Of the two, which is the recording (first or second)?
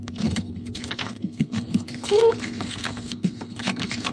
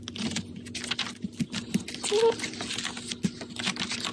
second